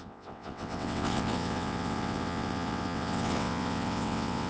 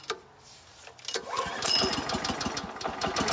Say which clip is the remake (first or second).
first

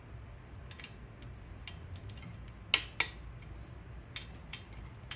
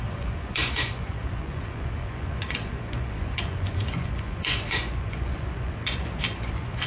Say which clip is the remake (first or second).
second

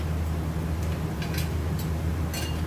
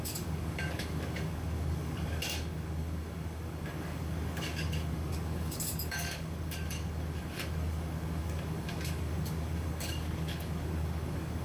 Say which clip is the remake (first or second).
second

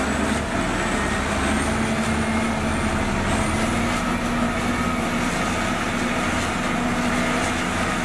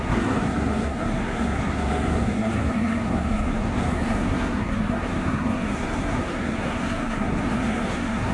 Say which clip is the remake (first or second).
second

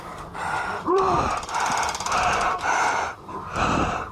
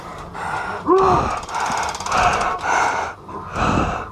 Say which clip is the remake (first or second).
first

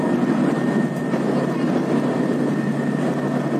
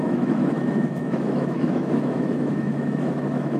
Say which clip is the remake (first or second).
second